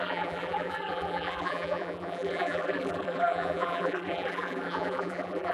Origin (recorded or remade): remade